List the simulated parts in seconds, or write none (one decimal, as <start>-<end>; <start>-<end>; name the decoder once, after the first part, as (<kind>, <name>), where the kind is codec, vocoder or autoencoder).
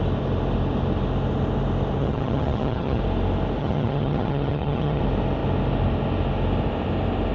2.0-3.0 (vocoder, HiFi-GAN); 3.6-5.0